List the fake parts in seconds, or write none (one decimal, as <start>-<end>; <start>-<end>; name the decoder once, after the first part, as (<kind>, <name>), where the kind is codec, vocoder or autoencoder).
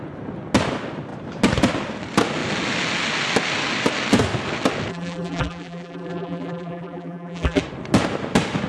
4.9-7.6 (vocoder, BigVGAN v2)